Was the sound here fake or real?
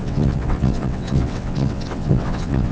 fake